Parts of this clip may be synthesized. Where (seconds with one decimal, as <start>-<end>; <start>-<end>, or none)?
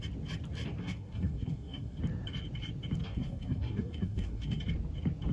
0.8-2.0; 3.0-4.6